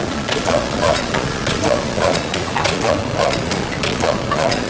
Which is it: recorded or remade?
remade